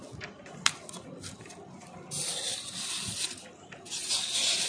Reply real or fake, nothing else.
real